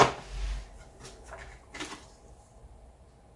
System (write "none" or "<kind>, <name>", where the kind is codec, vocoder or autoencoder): none